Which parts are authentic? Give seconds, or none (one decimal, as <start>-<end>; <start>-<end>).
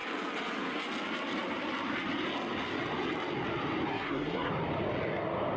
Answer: 0.0-3.9; 4.5-5.6